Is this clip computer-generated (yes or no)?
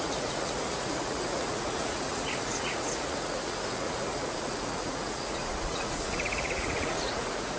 yes